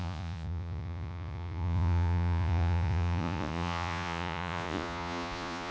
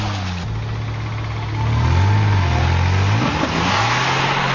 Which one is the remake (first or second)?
first